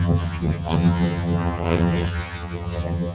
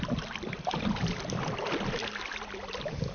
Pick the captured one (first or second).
second